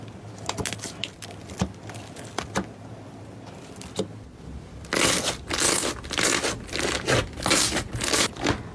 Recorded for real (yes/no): yes